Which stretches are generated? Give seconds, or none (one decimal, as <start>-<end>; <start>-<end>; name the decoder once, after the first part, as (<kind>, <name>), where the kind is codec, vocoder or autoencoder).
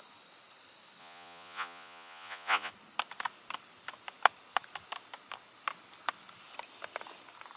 1.0-2.7 (vocoder, Vocos)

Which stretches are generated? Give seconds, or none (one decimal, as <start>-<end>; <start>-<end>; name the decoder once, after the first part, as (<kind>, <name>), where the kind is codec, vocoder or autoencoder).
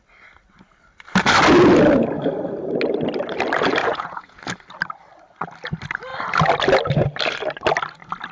3.8-4.4 (vocoder, Vocos)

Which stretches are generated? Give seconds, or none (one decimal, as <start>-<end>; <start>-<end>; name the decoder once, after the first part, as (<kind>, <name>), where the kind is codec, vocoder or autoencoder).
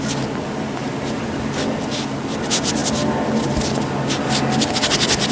0.8-1.4 (vocoder, BigVGAN v2)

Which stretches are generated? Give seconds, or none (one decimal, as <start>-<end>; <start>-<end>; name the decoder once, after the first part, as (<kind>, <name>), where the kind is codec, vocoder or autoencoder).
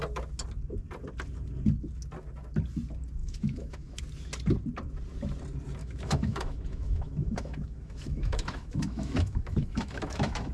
3.2-4.0 (autoencoder, DAC-VAE); 5.8-10.5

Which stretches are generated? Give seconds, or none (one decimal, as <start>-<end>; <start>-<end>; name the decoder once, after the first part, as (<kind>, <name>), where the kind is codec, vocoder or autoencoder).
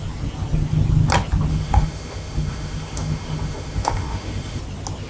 1.5-4.6 (autoencoder, DAC-VAE)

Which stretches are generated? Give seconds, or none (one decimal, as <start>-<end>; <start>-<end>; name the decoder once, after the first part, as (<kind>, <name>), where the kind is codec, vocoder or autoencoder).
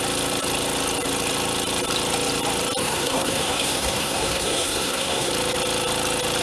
2.8-5.3 (codec, SNAC)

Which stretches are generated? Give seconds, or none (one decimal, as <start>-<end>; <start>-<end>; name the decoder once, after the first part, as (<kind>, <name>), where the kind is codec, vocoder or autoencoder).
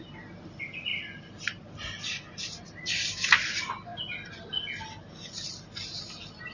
none